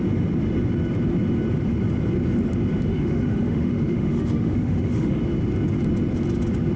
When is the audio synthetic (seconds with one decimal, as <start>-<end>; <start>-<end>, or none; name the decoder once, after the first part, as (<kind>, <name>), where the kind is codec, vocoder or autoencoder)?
2.9-5.2 (autoencoder, DAC-VAE)